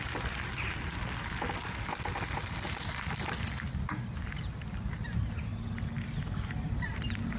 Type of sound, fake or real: real